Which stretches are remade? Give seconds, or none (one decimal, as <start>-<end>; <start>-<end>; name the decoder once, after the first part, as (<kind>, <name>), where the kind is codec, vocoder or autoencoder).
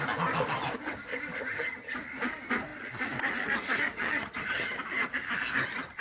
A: 1.4-2.0 (vocoder, HiFi-GAN); 4.0-4.7